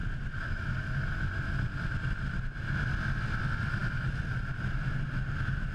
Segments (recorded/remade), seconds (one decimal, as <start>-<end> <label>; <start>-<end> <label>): 0.0-5.7 recorded